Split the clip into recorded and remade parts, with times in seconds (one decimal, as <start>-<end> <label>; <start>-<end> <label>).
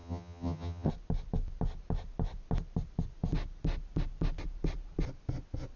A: 0.0-0.9 remade; 0.9-5.8 recorded